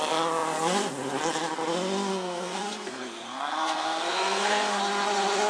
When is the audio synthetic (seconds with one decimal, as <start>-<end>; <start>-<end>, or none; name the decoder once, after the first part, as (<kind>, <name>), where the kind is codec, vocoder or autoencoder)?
2.1-4.8 (codec, SNAC)